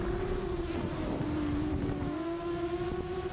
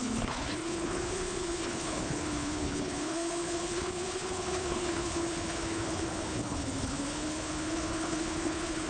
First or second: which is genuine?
first